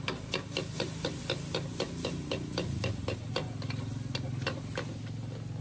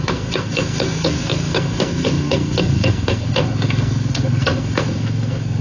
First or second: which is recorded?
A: first